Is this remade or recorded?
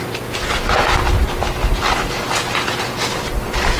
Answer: recorded